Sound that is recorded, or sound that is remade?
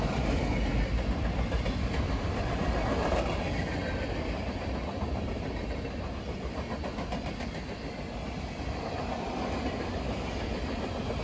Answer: recorded